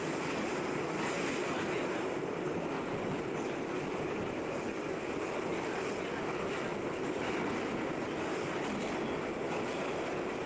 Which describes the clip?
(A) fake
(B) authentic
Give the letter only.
B